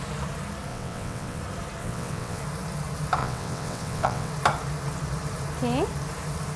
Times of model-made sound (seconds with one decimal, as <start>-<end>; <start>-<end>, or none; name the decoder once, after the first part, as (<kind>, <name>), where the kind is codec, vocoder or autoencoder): 0.7-1.4 (vocoder, WaveNeXt); 1.8-2.4; 3.2-4.3

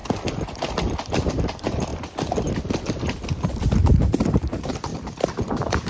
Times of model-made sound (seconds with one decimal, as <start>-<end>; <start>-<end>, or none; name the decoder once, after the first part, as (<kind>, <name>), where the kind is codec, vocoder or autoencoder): 1.3-1.9 (vocoder, BigVGAN v2); 3.6-4.9; 5.5-5.9